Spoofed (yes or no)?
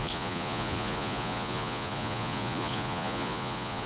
yes